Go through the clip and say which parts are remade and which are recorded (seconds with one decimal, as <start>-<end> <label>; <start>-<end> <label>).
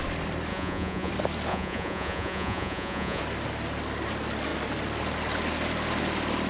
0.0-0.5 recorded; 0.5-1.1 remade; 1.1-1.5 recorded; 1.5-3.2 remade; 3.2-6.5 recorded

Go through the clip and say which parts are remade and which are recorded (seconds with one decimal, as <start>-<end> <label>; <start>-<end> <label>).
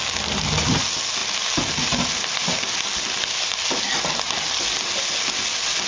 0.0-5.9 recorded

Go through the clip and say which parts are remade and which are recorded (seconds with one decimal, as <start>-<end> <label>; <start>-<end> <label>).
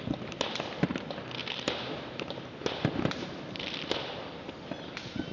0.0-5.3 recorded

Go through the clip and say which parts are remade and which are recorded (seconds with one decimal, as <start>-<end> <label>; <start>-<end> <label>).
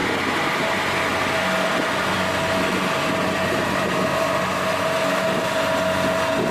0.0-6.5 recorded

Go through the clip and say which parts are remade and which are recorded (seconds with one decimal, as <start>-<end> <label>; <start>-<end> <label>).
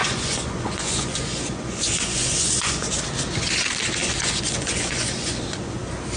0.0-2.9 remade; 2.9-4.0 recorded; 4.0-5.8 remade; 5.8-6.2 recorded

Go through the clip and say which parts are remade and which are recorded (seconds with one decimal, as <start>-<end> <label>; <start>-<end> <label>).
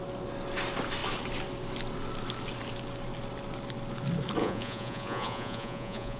0.0-4.4 recorded; 4.4-6.2 remade